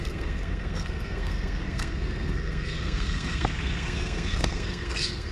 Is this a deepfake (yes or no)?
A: yes